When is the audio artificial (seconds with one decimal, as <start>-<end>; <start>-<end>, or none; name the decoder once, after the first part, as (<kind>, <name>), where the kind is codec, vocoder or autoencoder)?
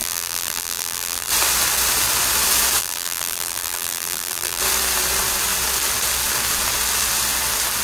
0.0-1.3 (vocoder, BigVGAN v2); 2.8-4.6